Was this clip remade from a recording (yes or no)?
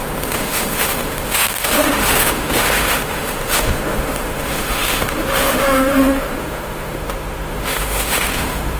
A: yes